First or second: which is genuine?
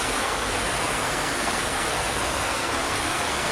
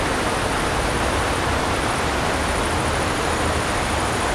second